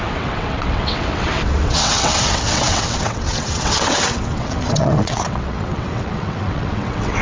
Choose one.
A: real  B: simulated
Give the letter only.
B